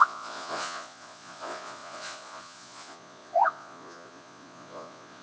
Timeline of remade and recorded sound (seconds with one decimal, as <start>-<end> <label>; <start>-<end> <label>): 0.0-5.2 remade